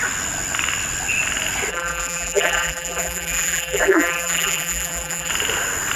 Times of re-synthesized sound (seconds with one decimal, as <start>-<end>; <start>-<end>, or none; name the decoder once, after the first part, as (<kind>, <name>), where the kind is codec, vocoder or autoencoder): 1.7-5.3 (vocoder, BigVGAN v2)